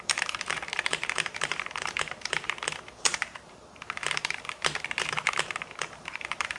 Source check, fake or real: fake